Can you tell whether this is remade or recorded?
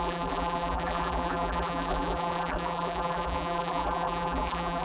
remade